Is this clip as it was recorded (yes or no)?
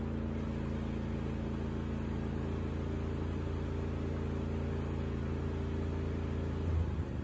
yes